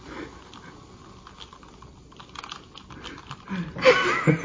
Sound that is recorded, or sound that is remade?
recorded